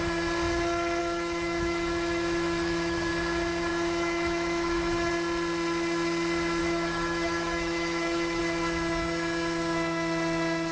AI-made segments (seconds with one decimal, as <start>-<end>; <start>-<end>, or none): 1.0-3.1; 3.7-5.1; 6.6-8.4